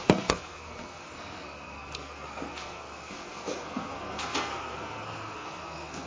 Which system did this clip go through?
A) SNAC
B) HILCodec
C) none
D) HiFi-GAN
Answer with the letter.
A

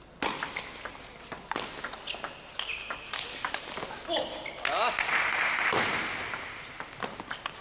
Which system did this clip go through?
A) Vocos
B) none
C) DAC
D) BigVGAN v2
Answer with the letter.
B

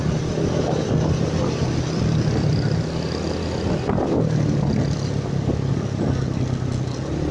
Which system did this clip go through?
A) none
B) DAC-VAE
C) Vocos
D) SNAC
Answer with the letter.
A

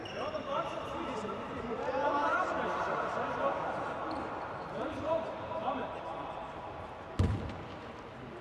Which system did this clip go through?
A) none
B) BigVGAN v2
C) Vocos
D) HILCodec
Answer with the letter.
A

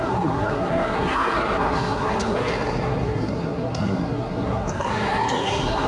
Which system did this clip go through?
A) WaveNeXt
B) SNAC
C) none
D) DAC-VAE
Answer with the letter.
B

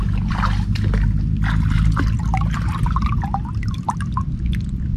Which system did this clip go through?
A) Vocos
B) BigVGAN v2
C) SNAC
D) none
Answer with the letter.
D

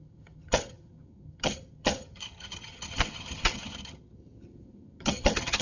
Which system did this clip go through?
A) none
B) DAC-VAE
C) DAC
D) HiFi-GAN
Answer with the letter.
D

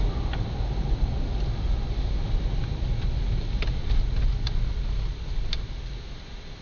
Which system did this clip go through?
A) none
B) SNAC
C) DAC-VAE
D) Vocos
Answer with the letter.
A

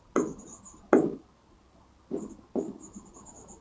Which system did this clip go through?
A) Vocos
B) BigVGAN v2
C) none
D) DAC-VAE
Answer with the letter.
C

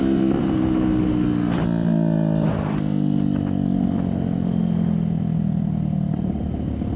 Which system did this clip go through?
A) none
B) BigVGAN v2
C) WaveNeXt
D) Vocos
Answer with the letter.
A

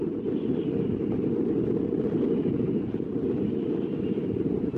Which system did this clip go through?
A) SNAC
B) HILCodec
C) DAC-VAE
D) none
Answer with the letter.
D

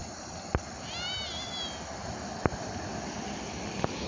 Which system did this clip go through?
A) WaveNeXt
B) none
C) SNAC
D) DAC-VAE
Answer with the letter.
B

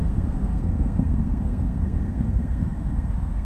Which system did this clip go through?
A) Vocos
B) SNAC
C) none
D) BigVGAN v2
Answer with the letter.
B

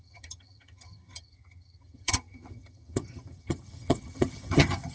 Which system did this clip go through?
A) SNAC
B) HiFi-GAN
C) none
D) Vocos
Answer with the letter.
B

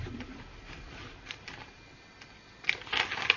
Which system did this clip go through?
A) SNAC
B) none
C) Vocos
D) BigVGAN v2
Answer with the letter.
B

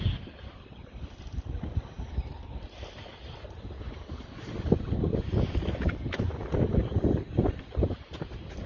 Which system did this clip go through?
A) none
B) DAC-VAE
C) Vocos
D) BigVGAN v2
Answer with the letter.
A